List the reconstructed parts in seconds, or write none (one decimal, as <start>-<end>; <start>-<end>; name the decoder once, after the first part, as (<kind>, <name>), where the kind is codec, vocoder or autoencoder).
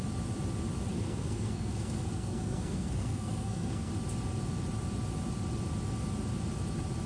0.9-3.9 (codec, SNAC)